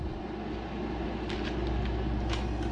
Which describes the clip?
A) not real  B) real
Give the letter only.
B